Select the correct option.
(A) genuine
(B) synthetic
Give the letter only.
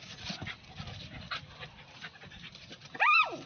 A